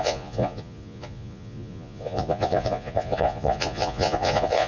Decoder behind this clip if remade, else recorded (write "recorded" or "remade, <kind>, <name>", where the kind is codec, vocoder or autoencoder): remade, vocoder, Vocos